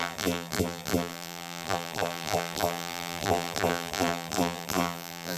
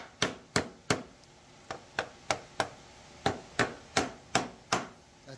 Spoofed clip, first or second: first